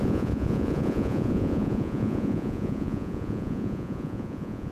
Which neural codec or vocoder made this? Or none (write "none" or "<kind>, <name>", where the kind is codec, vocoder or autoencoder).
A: vocoder, Vocos